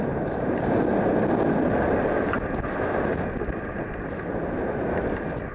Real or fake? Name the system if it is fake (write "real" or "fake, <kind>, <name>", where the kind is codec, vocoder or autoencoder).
real